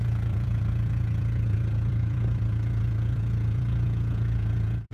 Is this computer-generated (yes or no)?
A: yes